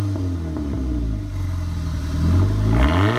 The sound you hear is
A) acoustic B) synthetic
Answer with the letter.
A